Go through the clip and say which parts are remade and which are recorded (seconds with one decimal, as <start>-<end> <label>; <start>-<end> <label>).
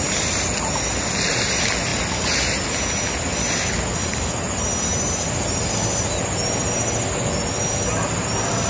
0.0-8.7 recorded